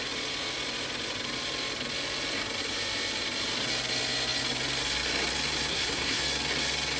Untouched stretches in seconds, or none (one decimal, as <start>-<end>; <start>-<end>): 0.0-5.7; 6.2-7.0